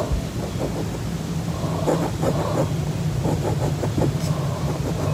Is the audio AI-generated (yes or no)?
no